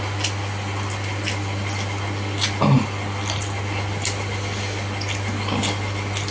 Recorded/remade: recorded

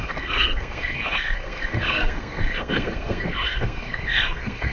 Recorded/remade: remade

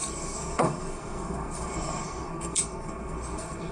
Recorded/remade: remade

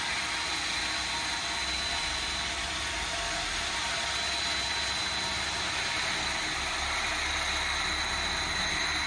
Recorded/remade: recorded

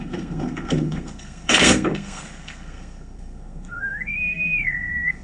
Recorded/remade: remade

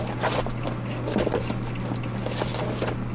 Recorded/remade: recorded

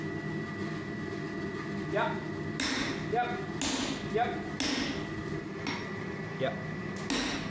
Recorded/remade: recorded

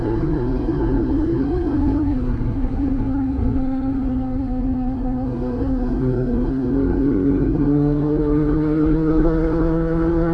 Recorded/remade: remade